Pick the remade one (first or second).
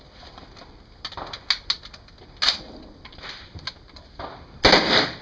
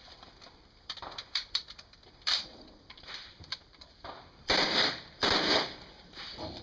second